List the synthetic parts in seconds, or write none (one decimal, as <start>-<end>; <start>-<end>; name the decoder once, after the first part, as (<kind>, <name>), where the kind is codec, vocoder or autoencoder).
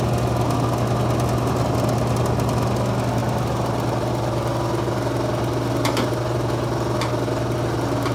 none